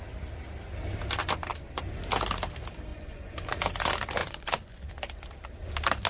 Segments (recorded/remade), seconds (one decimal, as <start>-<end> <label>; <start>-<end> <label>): 0.0-2.9 recorded; 2.9-3.6 remade; 3.6-4.2 recorded; 4.2-4.9 remade; 4.9-6.1 recorded